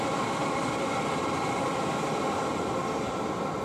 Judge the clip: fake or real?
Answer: real